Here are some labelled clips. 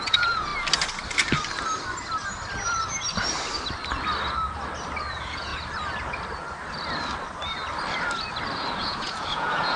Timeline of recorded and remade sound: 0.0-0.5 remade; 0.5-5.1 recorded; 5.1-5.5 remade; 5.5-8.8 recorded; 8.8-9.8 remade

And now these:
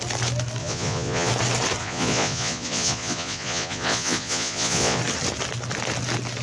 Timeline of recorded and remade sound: 0.0-0.6 recorded; 0.6-1.3 remade; 1.3-1.8 recorded; 1.8-5.0 remade; 5.0-6.4 recorded